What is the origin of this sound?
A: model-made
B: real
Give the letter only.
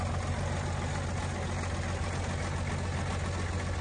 B